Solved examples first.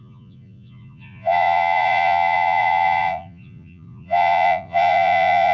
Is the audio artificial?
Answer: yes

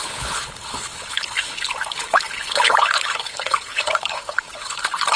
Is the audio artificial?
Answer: yes